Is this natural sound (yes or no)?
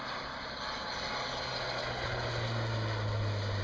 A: yes